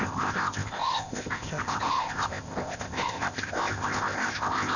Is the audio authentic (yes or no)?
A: no